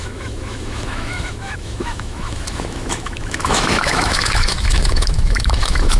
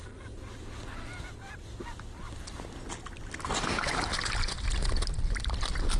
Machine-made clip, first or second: first